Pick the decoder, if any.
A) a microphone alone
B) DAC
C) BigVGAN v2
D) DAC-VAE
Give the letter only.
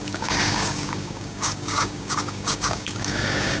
B